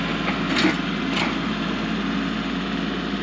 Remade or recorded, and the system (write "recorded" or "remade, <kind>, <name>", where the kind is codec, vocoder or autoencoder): recorded